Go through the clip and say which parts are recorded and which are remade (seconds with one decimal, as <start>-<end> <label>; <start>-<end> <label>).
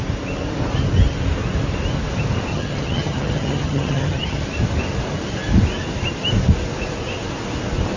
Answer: 0.0-2.5 recorded; 2.5-4.4 remade; 4.4-8.0 recorded